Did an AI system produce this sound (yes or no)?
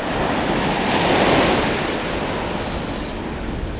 no